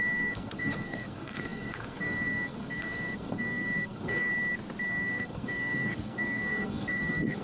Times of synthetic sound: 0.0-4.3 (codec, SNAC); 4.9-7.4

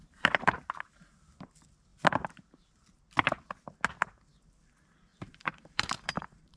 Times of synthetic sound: 0.0-0.7 (vocoder, BigVGAN v2); 5.1-6.6